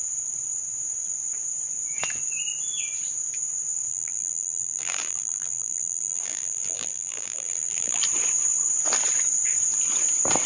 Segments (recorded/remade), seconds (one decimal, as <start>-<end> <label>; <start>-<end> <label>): 0.0-3.9 recorded; 3.9-8.0 remade; 8.0-10.5 recorded